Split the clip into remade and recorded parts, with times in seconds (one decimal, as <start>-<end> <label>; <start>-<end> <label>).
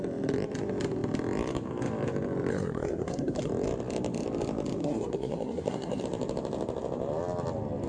0.0-2.5 recorded; 2.5-3.5 remade; 3.5-4.8 recorded; 4.8-6.0 remade; 6.0-7.9 recorded